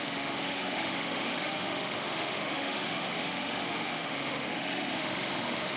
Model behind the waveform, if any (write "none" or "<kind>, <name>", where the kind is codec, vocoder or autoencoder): autoencoder, DAC-VAE